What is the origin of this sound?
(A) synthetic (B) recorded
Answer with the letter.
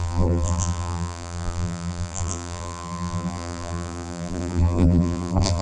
A